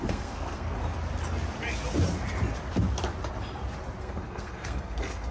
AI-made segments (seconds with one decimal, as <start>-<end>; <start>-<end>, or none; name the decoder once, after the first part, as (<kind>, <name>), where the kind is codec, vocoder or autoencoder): 0.0-0.8 (codec, SNAC); 4.0-5.3